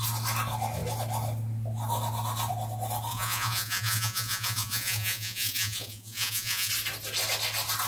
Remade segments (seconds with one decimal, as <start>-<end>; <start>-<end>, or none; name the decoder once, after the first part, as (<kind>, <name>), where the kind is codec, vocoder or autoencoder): 3.1-6.7 (vocoder, Vocos)